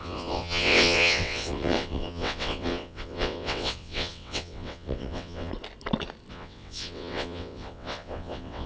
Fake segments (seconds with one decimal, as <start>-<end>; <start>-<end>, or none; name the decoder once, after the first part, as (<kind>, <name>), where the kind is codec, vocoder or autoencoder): 0.0-5.5 (vocoder, WaveNeXt); 6.3-8.7